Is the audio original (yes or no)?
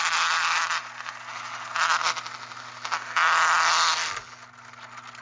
yes